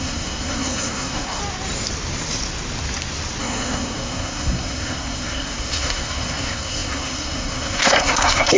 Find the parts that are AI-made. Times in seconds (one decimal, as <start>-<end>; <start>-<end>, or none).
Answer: 0.0-1.4; 3.4-8.6